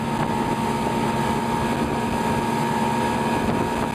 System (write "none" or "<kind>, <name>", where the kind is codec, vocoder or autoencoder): none